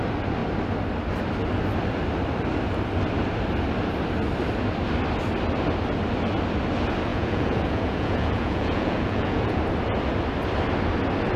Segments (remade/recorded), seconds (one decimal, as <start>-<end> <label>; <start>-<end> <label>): 0.0-7.1 recorded; 7.1-9.6 remade; 9.6-11.4 recorded